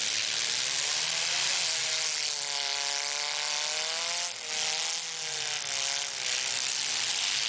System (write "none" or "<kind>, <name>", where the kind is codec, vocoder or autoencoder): none